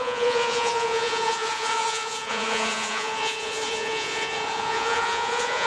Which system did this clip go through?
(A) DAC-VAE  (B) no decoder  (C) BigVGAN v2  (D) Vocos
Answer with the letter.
D